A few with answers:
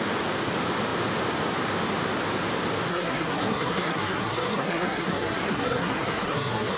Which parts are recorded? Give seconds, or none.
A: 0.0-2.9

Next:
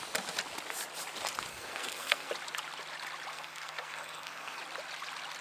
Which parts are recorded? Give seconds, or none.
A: 0.0-1.5; 2.3-3.3; 4.6-5.4

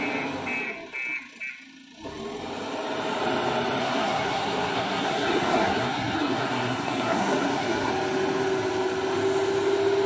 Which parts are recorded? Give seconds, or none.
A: 0.0-3.8; 7.9-10.1

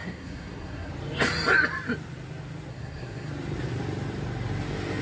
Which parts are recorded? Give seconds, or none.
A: 0.9-2.7; 3.3-5.0

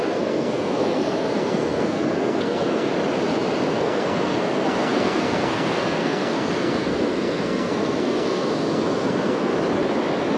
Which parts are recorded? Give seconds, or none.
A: 2.9-3.7; 9.5-10.4